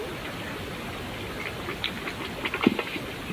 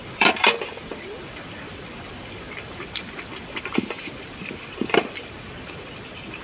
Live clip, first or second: first